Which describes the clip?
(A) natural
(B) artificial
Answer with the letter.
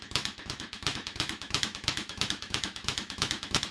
B